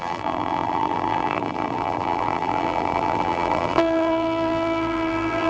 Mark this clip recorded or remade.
remade